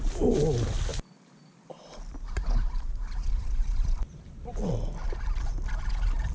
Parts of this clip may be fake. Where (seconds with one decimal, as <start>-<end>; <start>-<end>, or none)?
0.9-4.7